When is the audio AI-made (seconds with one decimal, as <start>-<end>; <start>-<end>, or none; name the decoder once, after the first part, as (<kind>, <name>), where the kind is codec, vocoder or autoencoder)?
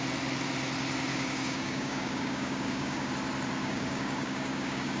1.1-3.1 (codec, DAC); 3.6-5.0